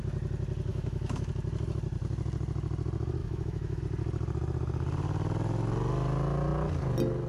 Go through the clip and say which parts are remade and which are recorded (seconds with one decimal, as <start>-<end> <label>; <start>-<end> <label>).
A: 0.0-0.7 recorded; 0.7-1.3 remade; 1.3-3.2 recorded; 3.2-3.8 remade; 3.8-7.3 recorded